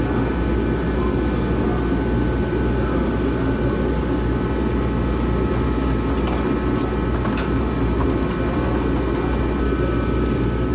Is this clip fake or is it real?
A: real